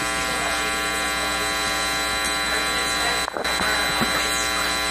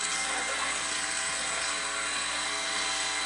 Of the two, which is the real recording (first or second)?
first